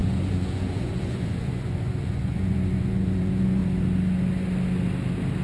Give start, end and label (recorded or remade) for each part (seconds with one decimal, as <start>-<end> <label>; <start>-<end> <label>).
0.0-3.6 remade; 3.6-5.4 recorded